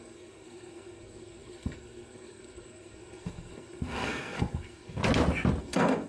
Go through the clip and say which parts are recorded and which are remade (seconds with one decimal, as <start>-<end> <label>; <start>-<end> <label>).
0.0-5.0 remade; 5.0-5.6 recorded; 5.6-6.1 remade